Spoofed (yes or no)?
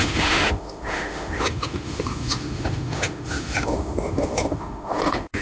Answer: yes